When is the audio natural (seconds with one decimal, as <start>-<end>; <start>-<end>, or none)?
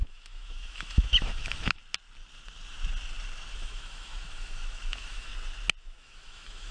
1.8-3.5; 5.3-5.8